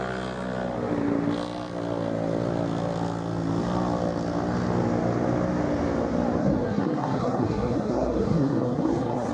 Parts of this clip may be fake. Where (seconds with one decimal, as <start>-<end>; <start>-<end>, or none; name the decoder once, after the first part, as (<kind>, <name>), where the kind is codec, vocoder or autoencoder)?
6.4-9.3 (codec, SNAC)